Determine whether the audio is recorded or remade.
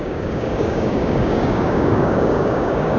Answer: remade